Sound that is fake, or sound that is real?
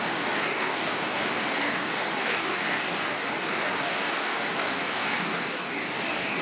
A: fake